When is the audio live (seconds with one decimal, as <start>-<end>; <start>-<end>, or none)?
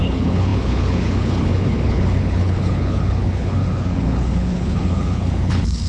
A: none